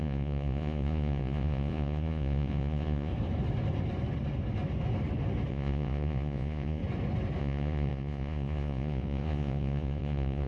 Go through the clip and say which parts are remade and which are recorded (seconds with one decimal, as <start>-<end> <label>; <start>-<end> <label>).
0.0-3.1 remade; 3.1-5.5 recorded; 5.5-6.8 remade; 6.8-7.4 recorded; 7.4-10.5 remade